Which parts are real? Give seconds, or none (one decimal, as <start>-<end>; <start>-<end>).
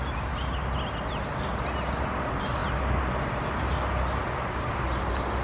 0.0-5.4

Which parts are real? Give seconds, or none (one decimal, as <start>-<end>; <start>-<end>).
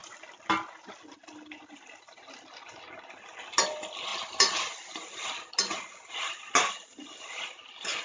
0.0-8.0